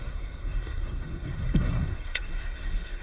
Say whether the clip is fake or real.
fake